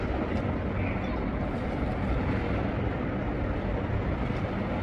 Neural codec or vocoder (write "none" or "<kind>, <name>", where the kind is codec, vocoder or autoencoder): none